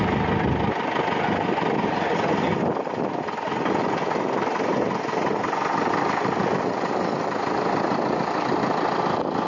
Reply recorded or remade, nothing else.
recorded